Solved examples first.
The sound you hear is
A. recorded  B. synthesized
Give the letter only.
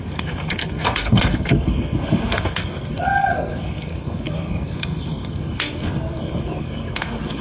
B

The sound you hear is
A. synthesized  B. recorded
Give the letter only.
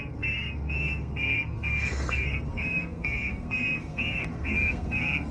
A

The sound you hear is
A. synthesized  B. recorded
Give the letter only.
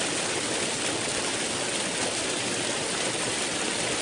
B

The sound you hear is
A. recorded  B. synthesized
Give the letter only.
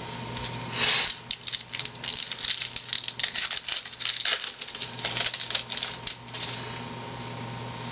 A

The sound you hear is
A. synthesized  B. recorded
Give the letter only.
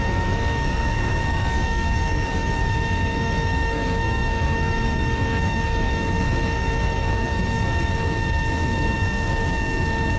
A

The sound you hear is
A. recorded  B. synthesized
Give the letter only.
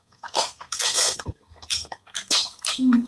B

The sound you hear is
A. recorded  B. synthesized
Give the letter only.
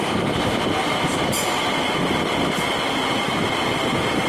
A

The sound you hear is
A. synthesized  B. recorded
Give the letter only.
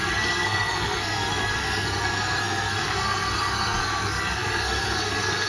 A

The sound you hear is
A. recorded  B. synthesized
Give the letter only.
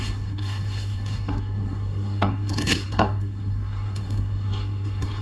B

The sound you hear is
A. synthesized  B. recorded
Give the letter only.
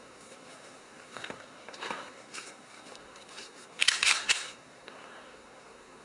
A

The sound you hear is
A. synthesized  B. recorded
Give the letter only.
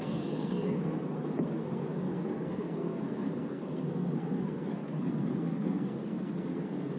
A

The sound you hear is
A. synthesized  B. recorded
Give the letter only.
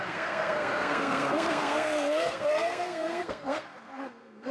A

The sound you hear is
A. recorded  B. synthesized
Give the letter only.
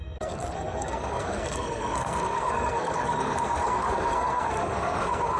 B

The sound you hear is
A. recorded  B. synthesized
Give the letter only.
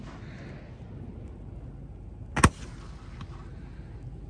A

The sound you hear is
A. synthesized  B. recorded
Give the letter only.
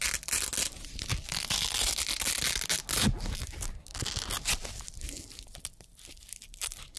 B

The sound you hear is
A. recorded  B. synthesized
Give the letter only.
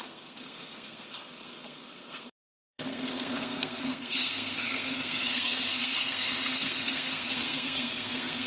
B